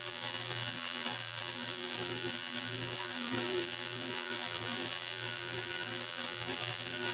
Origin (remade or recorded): remade